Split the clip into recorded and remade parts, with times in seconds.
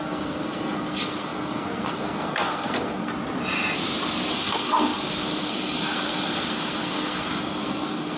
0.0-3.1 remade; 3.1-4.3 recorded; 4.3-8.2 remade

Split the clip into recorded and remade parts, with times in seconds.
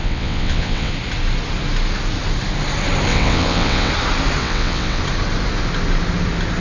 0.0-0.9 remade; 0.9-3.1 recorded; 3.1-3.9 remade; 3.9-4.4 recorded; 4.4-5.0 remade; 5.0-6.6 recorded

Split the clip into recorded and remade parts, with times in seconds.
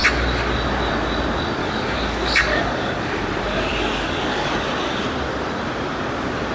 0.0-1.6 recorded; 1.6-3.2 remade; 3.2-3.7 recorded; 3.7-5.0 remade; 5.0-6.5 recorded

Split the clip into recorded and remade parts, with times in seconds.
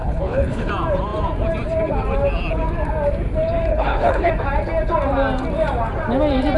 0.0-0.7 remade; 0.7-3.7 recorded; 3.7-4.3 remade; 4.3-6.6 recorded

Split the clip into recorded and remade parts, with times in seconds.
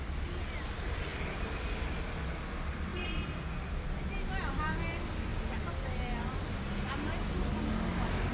0.0-8.3 recorded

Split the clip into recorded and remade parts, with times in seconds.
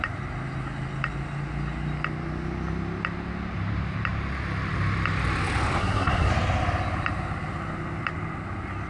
0.0-5.8 recorded; 5.8-6.3 remade; 6.3-8.9 recorded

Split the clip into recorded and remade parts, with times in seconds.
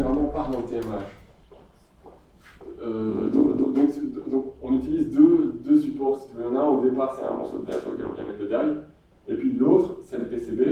0.0-3.1 recorded; 3.1-3.7 remade; 3.7-7.2 recorded; 7.2-8.3 remade; 8.3-10.7 recorded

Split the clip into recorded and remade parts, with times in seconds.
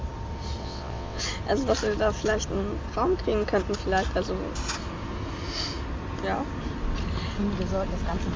0.0-0.6 recorded; 0.6-1.2 remade; 1.2-8.4 recorded